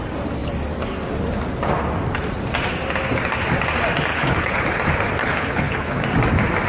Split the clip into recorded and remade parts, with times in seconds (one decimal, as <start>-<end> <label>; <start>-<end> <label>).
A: 0.0-4.1 recorded; 4.1-4.6 remade; 4.6-5.2 recorded; 5.2-6.0 remade; 6.0-6.7 recorded